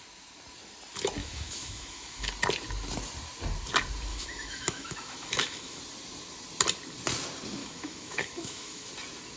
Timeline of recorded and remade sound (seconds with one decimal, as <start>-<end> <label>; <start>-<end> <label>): 0.0-1.2 recorded; 1.2-2.3 remade; 2.3-4.1 recorded; 4.1-5.8 remade; 5.8-7.6 recorded; 7.6-8.9 remade; 8.9-9.4 recorded